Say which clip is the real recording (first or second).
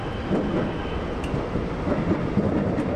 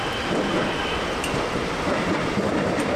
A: first